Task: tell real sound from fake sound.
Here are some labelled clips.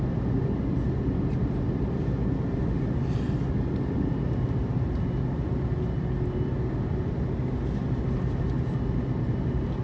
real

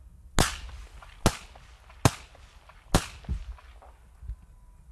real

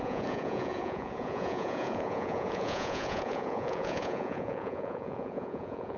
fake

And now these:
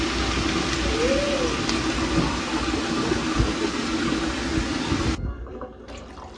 real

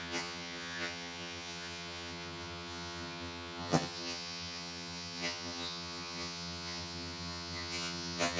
fake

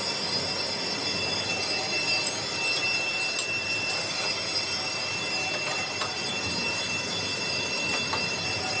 real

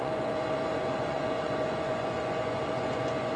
fake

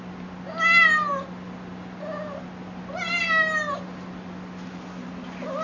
real